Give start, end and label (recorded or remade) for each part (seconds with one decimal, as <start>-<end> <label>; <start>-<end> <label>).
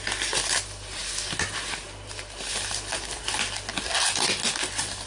0.0-5.1 recorded